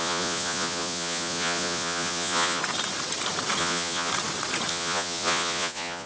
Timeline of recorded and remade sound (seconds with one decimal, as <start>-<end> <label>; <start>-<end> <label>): 0.0-2.6 remade; 2.6-3.6 recorded; 3.6-4.1 remade; 4.1-4.7 recorded; 4.7-6.1 remade

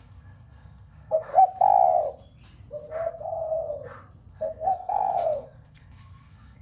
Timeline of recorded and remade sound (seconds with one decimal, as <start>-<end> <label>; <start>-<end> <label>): 0.0-1.3 remade; 1.3-3.1 recorded; 3.1-3.6 remade; 3.6-4.3 recorded; 4.3-6.6 remade

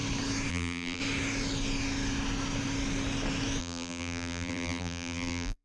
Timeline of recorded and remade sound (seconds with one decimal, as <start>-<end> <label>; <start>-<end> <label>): 0.0-0.5 recorded; 0.5-1.0 remade; 1.0-3.6 recorded; 3.6-5.6 remade